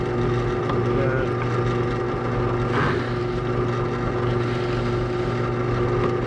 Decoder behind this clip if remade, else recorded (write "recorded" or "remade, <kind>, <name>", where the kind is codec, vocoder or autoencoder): recorded